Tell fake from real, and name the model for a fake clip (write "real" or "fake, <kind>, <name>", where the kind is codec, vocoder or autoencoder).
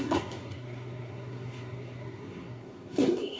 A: fake, codec, SNAC